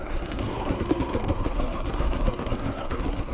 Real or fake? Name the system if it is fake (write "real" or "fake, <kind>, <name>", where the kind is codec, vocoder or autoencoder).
fake, codec, SNAC